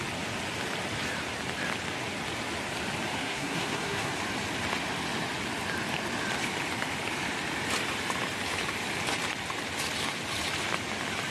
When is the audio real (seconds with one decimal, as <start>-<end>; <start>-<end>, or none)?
0.0-3.2; 4.1-11.3